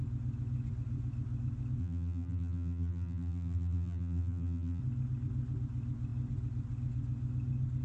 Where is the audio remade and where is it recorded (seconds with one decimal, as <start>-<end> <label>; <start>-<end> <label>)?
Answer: 0.0-1.8 recorded; 1.8-4.8 remade; 4.8-7.8 recorded